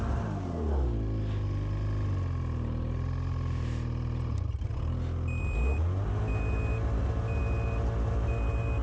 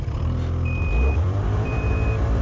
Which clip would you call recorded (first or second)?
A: first